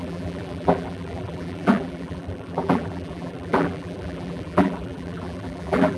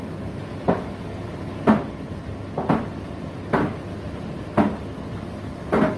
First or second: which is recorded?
second